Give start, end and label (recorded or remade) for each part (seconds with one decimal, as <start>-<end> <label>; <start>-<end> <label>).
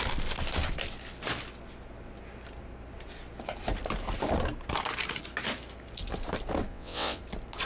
0.0-6.7 recorded; 6.7-7.2 remade; 7.2-7.7 recorded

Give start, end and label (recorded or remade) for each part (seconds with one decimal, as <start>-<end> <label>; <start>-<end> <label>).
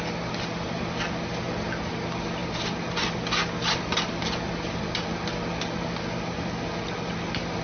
0.0-7.6 recorded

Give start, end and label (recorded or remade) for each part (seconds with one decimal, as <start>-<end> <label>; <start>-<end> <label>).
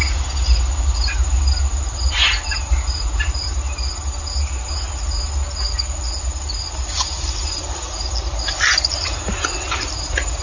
0.0-10.4 recorded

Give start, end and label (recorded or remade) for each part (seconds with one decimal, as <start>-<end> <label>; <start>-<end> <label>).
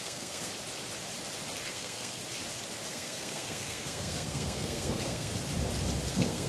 0.0-0.5 remade; 0.5-1.7 recorded; 1.7-2.2 remade; 2.2-2.9 recorded; 2.9-5.3 remade; 5.3-6.1 recorded; 6.1-6.5 remade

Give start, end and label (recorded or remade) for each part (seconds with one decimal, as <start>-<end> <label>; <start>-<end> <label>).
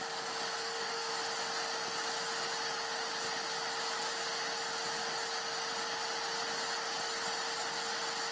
0.0-0.6 recorded; 0.6-1.1 remade; 1.1-8.3 recorded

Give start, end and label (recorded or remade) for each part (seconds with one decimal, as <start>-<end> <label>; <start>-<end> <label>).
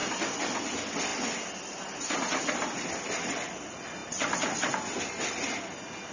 0.0-6.1 recorded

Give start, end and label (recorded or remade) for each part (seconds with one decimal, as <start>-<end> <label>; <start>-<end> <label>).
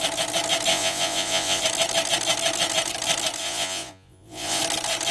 0.0-0.7 recorded; 0.7-1.6 remade; 1.6-3.4 recorded; 3.4-4.6 remade; 4.6-5.1 recorded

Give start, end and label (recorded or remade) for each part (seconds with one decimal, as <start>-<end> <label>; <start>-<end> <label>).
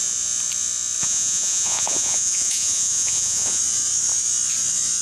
0.0-1.0 recorded; 1.0-3.6 remade; 3.6-5.0 recorded